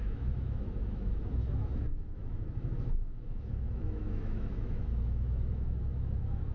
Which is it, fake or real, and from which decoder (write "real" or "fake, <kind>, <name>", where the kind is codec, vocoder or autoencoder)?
fake, autoencoder, DAC-VAE